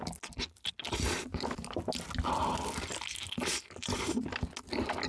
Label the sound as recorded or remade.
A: recorded